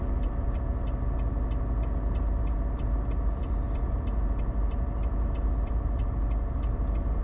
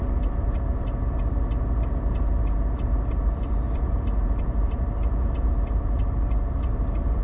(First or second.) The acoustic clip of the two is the first